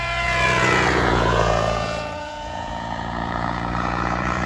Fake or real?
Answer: fake